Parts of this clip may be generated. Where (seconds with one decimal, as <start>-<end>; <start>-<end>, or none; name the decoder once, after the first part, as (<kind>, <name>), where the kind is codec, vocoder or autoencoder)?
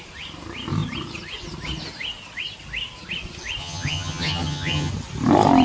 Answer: 3.6-4.9 (vocoder, HiFi-GAN)